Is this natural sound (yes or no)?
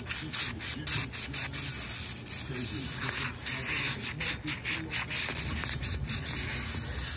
yes